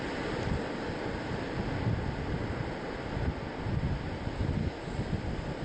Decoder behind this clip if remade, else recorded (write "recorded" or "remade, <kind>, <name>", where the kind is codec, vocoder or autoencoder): recorded